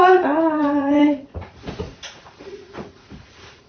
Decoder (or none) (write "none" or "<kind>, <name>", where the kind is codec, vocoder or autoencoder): vocoder, Vocos